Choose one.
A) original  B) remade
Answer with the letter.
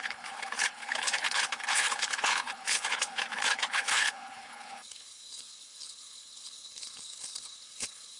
B